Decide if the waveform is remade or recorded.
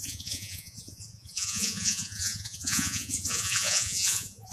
remade